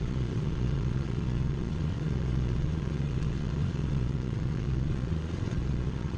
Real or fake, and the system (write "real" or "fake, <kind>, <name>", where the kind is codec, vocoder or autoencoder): fake, vocoder, Vocos